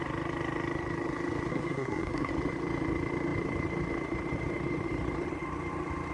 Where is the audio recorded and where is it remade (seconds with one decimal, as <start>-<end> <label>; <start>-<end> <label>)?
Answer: 0.0-1.5 recorded; 1.5-2.3 remade; 2.3-6.1 recorded